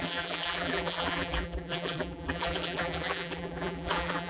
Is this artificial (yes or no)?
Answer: yes